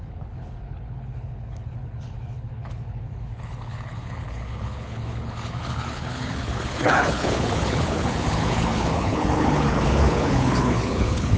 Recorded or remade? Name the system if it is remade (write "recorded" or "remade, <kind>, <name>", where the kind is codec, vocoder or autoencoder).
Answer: remade, codec, HILCodec